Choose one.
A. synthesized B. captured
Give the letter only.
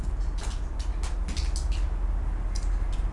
B